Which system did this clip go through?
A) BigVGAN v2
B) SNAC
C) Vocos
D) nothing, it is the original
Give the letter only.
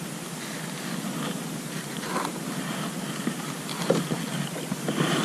D